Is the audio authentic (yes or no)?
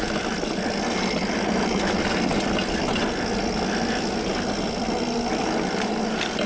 yes